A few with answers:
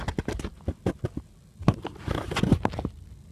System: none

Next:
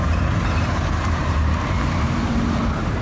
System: vocoder, BigVGAN v2